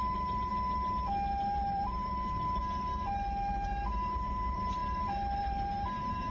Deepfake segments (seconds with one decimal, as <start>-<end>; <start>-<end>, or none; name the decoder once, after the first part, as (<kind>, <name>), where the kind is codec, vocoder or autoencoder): 0.0-0.5 (vocoder, BigVGAN v2); 1.3-2.6; 3.5-4.8; 5.4-6.3